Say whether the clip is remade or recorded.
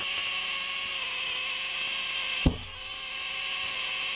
recorded